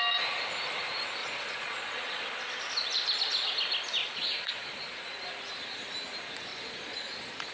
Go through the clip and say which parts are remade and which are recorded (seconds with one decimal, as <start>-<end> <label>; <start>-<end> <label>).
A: 0.0-1.2 recorded; 1.2-2.3 remade; 2.3-4.0 recorded; 4.0-5.2 remade; 5.2-6.5 recorded; 6.5-7.5 remade